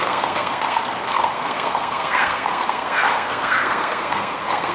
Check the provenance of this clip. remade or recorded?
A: remade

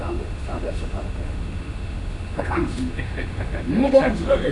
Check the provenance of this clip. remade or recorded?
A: remade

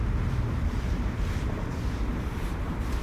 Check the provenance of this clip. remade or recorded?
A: remade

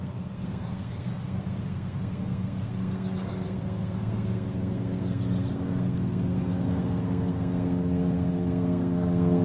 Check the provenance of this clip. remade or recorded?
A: remade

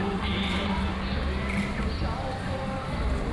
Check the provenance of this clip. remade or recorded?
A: recorded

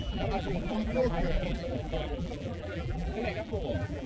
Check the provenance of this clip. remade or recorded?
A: remade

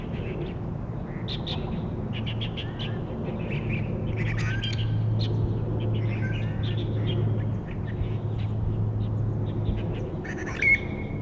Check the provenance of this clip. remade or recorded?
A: recorded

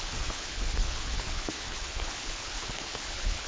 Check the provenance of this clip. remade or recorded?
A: remade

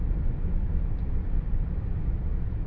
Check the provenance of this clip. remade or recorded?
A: recorded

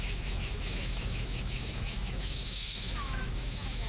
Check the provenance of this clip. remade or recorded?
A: remade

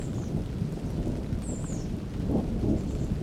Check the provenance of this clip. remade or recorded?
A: recorded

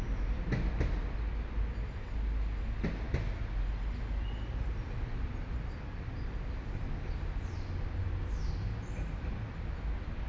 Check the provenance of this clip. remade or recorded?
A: recorded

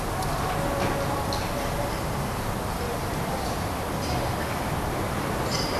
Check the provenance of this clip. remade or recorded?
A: recorded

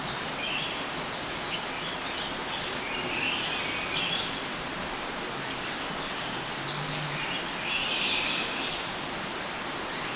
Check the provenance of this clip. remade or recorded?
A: recorded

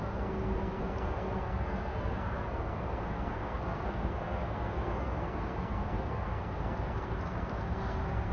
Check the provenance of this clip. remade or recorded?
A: remade